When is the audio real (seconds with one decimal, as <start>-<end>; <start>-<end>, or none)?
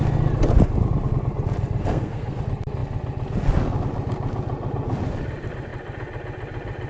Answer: 0.0-1.8; 2.4-6.9